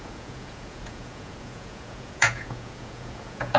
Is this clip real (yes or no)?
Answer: no